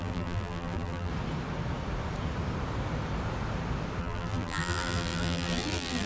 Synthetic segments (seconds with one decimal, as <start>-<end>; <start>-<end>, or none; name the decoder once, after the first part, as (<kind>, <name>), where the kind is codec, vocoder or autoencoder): 0.0-1.1 (vocoder, BigVGAN v2); 4.0-6.1